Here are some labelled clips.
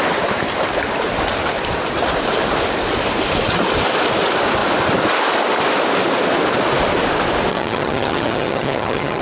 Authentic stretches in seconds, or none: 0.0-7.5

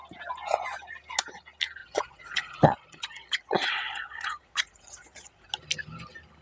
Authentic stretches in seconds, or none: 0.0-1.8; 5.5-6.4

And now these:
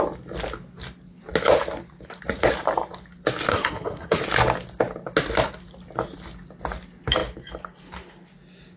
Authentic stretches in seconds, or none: 0.0-3.5; 4.2-8.8

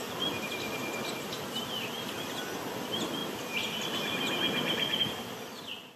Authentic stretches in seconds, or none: 0.0-6.0